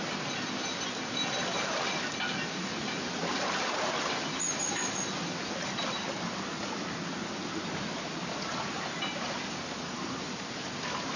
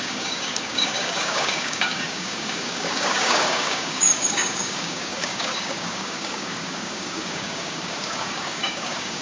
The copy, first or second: second